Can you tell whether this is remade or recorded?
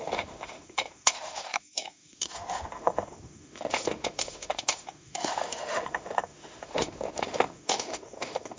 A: remade